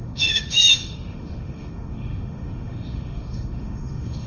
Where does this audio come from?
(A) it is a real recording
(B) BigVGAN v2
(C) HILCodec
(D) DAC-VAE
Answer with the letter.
D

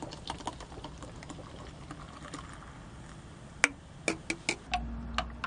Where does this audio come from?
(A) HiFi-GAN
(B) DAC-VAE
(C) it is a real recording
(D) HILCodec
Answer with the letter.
C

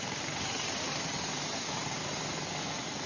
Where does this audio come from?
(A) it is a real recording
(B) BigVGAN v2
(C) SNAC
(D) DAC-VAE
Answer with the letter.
A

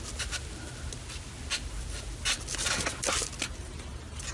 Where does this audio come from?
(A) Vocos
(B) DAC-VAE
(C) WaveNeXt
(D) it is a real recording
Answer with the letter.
D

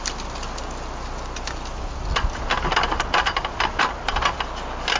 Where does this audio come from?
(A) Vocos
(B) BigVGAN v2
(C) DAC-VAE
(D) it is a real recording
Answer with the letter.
D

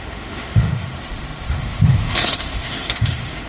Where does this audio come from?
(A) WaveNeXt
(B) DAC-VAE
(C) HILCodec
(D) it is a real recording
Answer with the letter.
B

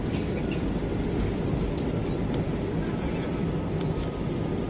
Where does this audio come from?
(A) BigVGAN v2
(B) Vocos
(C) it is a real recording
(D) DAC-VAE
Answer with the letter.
C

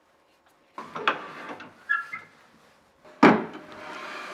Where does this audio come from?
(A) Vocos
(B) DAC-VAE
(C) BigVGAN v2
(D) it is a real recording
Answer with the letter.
D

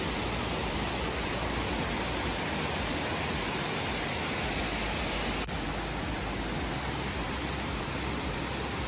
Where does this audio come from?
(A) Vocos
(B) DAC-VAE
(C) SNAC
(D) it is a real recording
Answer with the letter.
D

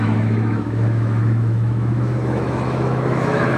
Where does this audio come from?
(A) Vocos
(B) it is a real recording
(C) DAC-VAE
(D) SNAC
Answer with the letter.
C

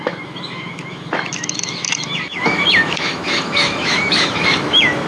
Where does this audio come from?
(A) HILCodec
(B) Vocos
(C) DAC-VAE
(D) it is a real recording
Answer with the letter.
C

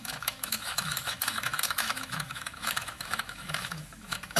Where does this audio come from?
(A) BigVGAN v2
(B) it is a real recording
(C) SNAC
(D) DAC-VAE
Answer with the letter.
D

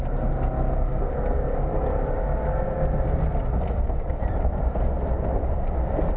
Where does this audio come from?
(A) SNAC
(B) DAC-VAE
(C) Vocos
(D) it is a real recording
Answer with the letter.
D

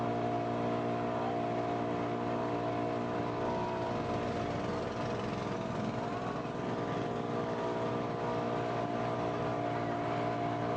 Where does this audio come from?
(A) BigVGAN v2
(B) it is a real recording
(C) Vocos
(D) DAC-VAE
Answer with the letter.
B